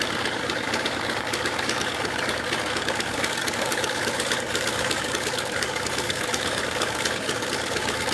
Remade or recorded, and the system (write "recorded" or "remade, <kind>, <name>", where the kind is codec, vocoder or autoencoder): remade, codec, DAC